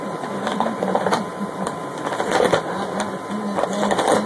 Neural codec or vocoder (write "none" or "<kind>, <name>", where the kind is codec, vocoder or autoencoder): none